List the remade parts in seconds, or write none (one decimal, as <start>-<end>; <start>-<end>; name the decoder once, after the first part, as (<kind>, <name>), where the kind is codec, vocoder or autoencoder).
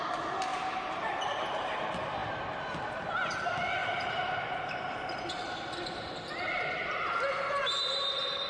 0.5-1.7 (vocoder, BigVGAN v2); 3.8-4.4